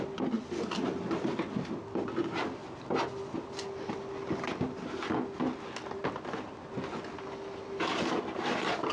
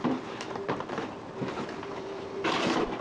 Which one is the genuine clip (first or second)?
first